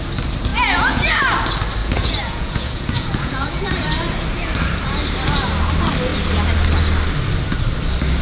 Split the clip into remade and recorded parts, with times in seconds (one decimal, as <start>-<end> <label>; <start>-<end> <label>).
0.0-0.5 recorded; 0.5-1.1 remade; 1.1-1.8 recorded; 1.8-3.8 remade; 3.8-8.2 recorded